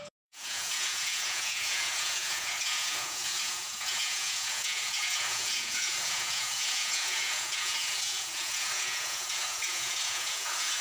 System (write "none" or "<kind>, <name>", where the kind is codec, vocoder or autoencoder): vocoder, Vocos